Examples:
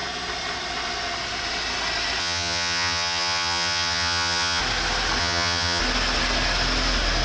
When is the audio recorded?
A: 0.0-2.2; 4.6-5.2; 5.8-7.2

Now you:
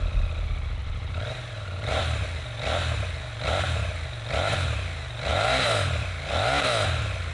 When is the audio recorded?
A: 0.0-0.8; 2.0-5.3; 6.1-7.3

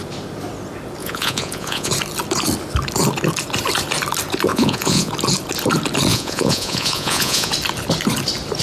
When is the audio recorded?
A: 0.0-1.0; 1.9-4.5; 5.1-6.1; 7.5-8.6

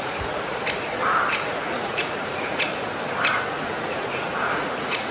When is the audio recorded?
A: 0.6-1.3; 2.7-3.4

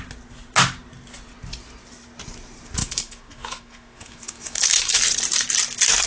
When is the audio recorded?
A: 0.0-2.8; 5.0-6.1

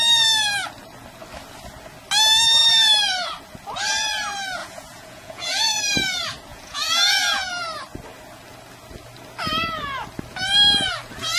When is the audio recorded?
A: 0.0-4.6; 5.8-6.5; 7.5-11.4

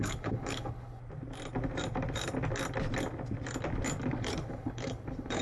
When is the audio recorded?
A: 1.0-4.2

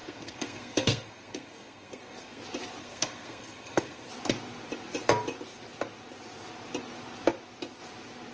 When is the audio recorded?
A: 2.4-2.8; 4.1-8.3